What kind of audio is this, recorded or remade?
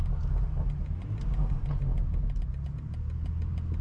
recorded